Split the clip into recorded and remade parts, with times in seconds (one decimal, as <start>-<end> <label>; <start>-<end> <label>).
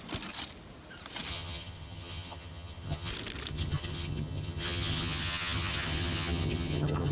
0.0-1.3 recorded; 1.3-3.1 remade; 3.1-3.5 recorded; 3.5-7.1 remade